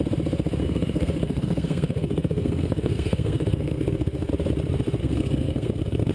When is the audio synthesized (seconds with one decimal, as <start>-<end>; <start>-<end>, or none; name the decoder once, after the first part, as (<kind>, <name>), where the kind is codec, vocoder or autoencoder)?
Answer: 0.6-4.3 (codec, SNAC); 5.0-6.1